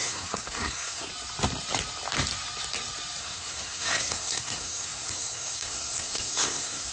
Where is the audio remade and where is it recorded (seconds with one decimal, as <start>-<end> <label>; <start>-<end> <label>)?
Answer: 0.0-1.1 remade; 1.1-3.2 recorded; 3.2-6.9 remade